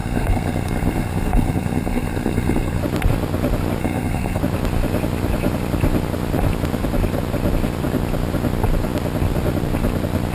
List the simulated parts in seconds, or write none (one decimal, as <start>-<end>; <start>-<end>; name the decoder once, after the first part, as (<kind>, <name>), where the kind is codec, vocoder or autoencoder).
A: 0.0-2.8 (codec, SNAC); 3.8-4.4